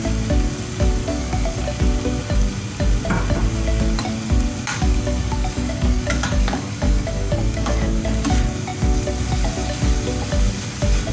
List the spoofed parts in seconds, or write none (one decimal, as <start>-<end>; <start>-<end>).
1.0-1.6; 4.7-8.0